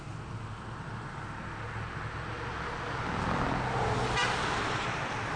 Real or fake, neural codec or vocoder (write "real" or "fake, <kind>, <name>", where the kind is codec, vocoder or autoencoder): real